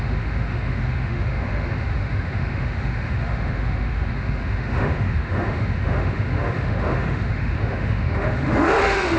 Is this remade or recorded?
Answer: remade